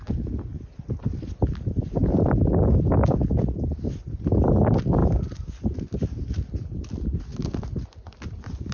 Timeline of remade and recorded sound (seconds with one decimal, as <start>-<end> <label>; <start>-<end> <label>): 0.0-8.7 recorded